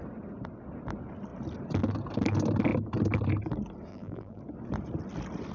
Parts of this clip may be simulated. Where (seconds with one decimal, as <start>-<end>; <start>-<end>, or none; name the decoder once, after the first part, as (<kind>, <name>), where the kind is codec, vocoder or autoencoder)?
3.9-4.4 (vocoder, BigVGAN v2)